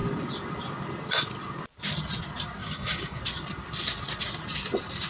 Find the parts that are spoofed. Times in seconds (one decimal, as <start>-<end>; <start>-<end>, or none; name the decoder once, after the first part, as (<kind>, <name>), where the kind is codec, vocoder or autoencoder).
2.6-3.2 (codec, DAC)